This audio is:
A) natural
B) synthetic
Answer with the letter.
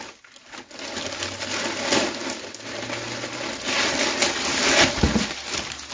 A